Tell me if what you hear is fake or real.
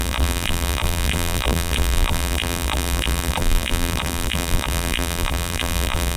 fake